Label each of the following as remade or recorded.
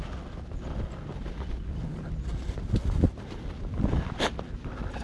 recorded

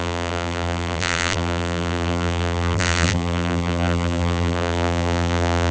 remade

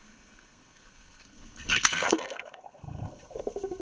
remade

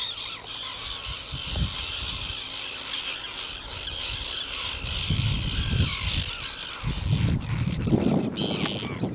recorded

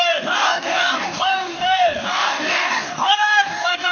remade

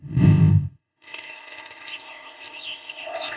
remade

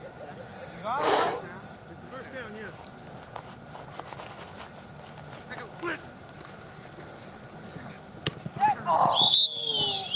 recorded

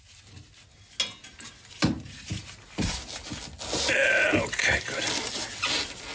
recorded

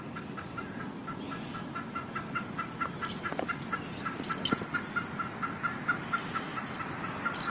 recorded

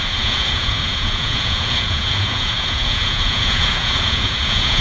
remade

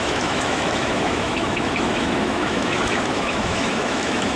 remade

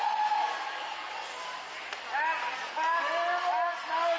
recorded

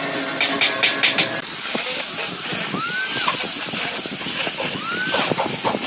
recorded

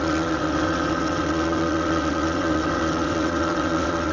remade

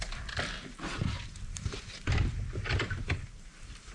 remade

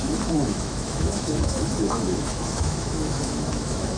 remade